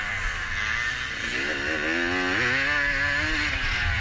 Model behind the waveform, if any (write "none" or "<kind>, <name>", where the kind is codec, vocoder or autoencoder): none